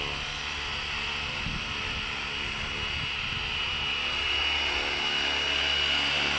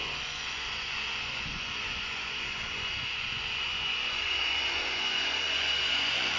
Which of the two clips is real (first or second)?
first